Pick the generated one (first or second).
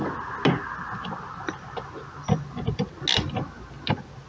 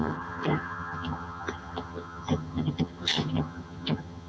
second